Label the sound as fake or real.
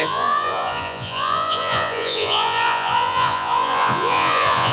fake